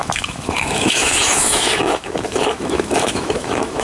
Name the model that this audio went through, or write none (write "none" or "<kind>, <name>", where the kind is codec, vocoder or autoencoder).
autoencoder, DAC-VAE